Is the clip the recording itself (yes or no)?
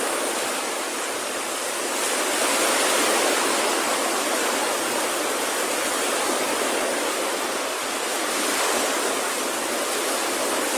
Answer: yes